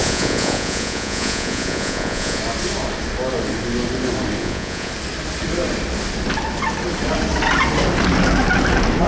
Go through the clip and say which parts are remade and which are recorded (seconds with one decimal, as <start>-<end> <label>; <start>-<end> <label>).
0.0-2.4 remade; 2.4-4.4 recorded; 4.4-4.9 remade; 4.9-9.1 recorded